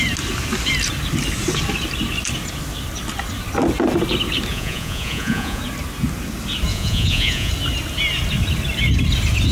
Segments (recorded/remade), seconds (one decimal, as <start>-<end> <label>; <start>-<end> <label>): 0.0-4.5 recorded; 4.5-5.6 remade; 5.6-6.7 recorded; 6.7-7.5 remade; 7.5-9.5 recorded